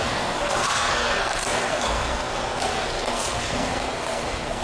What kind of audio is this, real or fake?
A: fake